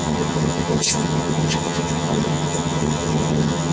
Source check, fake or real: fake